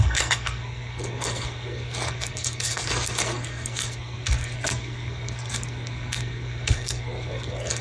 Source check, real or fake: fake